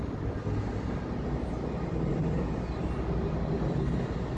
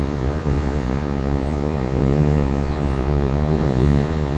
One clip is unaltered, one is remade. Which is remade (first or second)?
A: second